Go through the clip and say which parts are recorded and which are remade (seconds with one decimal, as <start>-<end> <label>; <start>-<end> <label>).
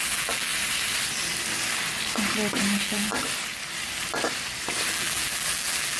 0.0-0.5 remade; 0.5-2.6 recorded; 2.6-3.1 remade; 3.1-4.9 recorded; 4.9-6.0 remade